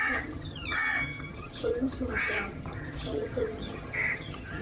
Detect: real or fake fake